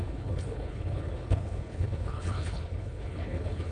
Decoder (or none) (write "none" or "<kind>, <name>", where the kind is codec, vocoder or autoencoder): codec, HILCodec